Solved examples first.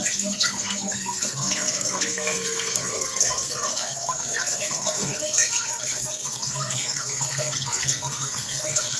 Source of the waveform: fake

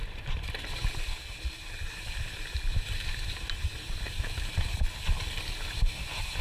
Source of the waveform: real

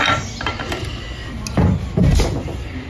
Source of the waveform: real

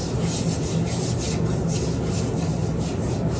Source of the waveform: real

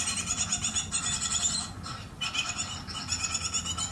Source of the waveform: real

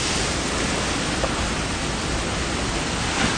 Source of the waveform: real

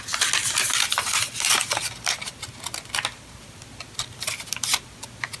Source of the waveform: real